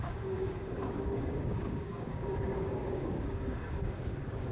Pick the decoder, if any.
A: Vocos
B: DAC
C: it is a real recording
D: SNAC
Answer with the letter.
B